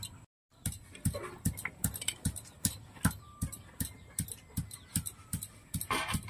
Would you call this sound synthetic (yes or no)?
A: no